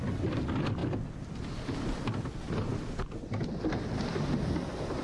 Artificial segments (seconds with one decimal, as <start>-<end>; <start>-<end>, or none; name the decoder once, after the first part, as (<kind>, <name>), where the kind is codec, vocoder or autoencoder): none